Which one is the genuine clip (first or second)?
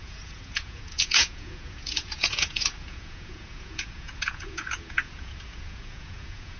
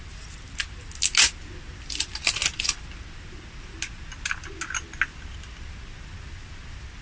second